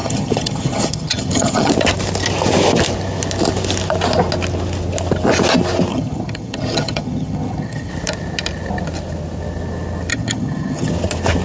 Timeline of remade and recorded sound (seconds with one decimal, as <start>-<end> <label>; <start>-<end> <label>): 0.0-1.7 remade; 1.7-5.9 recorded; 5.9-7.9 remade; 7.9-10.1 recorded; 10.1-10.9 remade; 10.9-11.4 recorded